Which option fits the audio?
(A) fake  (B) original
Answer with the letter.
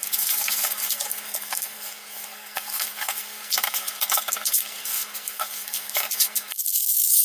A